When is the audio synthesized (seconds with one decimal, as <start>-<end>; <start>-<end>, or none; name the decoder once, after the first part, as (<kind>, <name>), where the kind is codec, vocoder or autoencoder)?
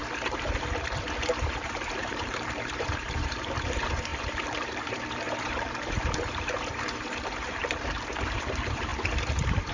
1.2-7.6 (vocoder, BigVGAN v2); 8.1-8.9